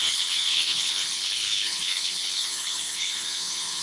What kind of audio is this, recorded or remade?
remade